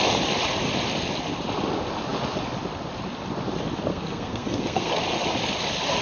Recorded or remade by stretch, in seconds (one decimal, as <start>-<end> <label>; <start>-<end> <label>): 0.0-3.9 recorded; 3.9-4.9 remade; 4.9-6.0 recorded